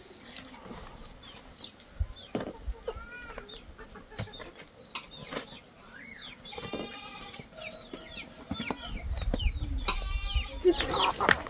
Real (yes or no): yes